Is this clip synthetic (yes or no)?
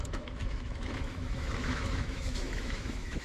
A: yes